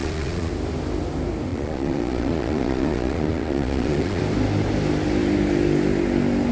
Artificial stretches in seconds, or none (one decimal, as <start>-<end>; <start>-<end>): 0.0-0.5; 1.5-4.2